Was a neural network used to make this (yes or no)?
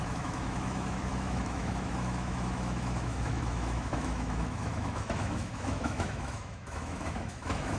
yes